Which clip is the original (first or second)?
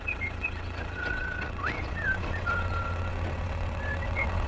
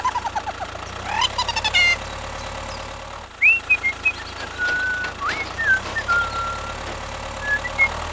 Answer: second